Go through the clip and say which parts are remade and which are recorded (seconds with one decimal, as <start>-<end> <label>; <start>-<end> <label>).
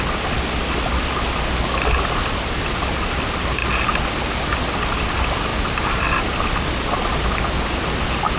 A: 0.0-8.4 recorded